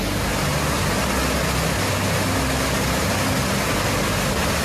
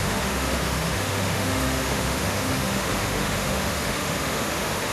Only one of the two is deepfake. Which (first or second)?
second